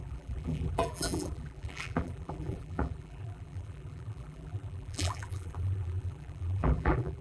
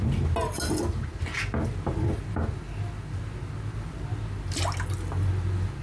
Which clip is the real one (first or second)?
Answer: second